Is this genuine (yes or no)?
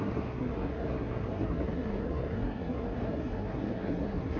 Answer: no